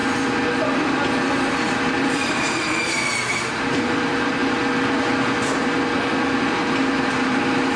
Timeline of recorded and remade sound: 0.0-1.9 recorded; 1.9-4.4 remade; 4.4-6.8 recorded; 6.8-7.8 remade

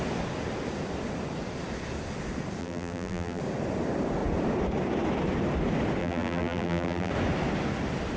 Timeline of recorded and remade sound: 0.0-2.6 recorded; 2.6-3.4 remade; 3.4-6.0 recorded; 6.0-7.1 remade; 7.1-8.2 recorded

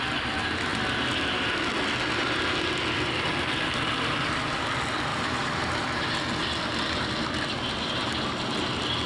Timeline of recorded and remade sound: 0.0-5.1 recorded; 5.1-6.4 remade; 6.4-9.1 recorded

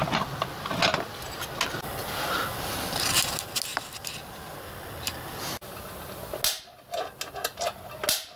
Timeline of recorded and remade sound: 0.0-8.4 recorded